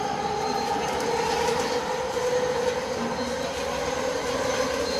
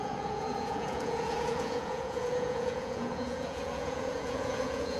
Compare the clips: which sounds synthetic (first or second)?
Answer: second